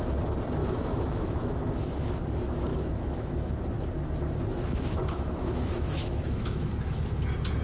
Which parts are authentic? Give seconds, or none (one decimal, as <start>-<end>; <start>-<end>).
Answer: 0.0-0.6; 2.0-2.7; 3.5-5.0; 6.7-7.6